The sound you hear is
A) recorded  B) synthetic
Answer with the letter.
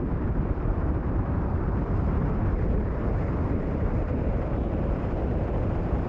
B